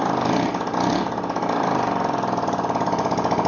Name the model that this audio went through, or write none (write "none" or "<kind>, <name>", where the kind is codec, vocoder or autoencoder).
none